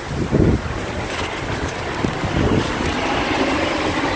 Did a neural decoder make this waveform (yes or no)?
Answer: no